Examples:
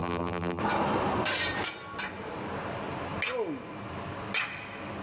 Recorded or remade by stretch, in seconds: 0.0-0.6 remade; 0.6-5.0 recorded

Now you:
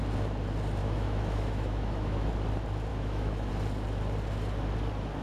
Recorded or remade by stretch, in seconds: 0.0-0.8 recorded; 0.8-2.3 remade; 2.3-2.9 recorded; 2.9-3.5 remade; 3.5-5.2 recorded

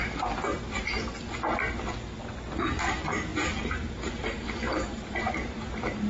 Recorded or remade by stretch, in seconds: 0.0-0.5 remade; 0.5-2.6 recorded; 2.6-6.1 remade

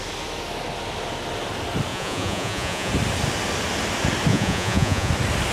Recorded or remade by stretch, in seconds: 0.0-1.9 recorded; 1.9-2.9 remade; 2.9-4.3 recorded; 4.3-5.1 remade; 5.1-5.5 recorded

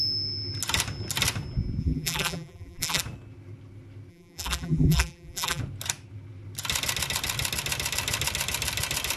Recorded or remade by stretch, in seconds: 0.0-1.8 recorded; 1.8-3.0 remade; 3.0-4.1 recorded; 4.1-5.6 remade; 5.6-9.2 recorded

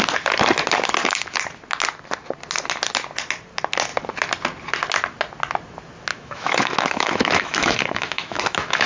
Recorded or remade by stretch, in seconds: 0.0-6.1 recorded; 6.1-8.9 remade

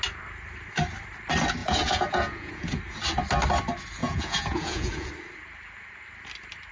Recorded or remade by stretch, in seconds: 0.0-1.6 recorded; 1.6-2.8 remade; 2.8-4.0 recorded; 4.0-5.1 remade; 5.1-6.7 recorded